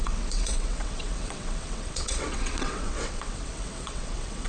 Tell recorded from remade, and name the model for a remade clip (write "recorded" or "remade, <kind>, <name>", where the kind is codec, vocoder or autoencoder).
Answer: remade, vocoder, WaveNeXt